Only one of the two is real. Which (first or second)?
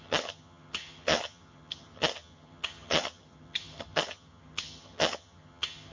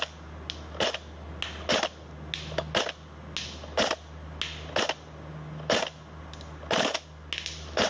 second